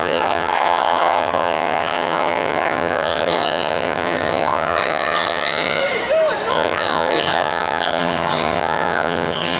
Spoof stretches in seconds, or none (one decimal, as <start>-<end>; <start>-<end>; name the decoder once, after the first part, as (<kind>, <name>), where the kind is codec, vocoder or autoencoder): 0.0-5.8 (vocoder, HiFi-GAN); 6.5-9.6